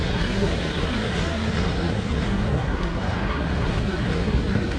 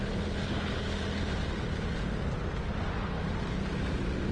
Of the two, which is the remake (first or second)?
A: first